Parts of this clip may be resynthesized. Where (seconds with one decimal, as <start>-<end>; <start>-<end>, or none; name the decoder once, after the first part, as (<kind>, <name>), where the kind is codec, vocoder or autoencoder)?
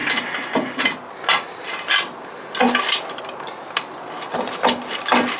none